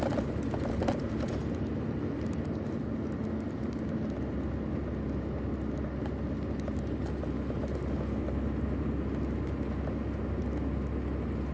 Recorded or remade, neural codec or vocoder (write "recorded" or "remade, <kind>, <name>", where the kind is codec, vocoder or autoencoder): recorded